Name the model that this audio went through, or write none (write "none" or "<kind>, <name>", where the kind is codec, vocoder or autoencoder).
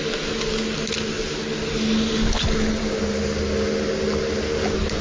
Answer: none